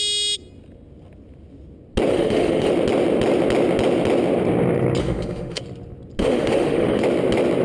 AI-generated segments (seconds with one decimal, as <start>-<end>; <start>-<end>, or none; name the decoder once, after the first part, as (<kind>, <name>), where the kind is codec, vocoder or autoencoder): 2.1-2.7 (autoencoder, DAC-VAE); 5.0-5.6; 6.2-7.0